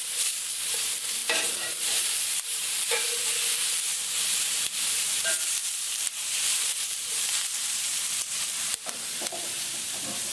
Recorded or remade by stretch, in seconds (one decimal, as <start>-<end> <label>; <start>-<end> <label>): 0.0-10.3 remade